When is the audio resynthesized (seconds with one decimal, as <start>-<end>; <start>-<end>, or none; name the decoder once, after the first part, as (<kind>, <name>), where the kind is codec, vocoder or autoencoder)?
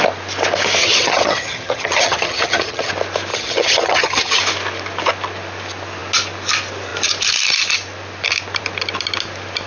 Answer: 0.8-2.9 (vocoder, HiFi-GAN); 3.3-4.4